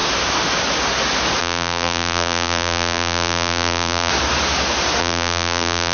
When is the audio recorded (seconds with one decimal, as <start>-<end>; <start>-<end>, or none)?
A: 0.0-1.4; 4.1-5.0